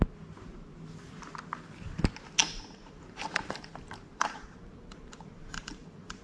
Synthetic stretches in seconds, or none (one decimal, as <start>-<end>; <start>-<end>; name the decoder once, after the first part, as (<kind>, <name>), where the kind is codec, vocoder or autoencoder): 2.4-6.2 (vocoder, BigVGAN v2)